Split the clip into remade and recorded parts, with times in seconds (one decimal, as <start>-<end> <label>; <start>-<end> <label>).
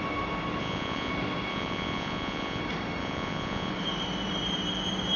0.0-0.6 recorded; 0.6-1.1 remade; 1.1-1.5 recorded; 1.5-2.6 remade; 2.6-3.0 recorded; 3.0-3.7 remade; 3.7-5.2 recorded